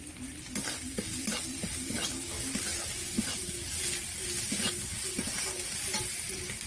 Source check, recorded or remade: recorded